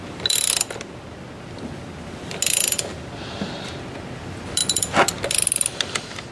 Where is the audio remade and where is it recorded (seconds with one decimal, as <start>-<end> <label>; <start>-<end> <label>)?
0.0-6.3 recorded